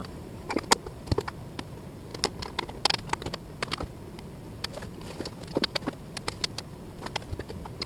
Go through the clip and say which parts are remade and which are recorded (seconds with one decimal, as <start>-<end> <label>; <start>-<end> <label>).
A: 0.0-0.7 remade; 0.7-7.9 recorded